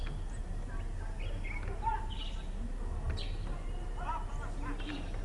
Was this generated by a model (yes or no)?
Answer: no